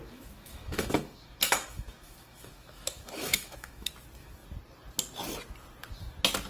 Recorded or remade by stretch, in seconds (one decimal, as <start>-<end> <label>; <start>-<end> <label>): 0.0-3.9 remade; 3.9-6.5 recorded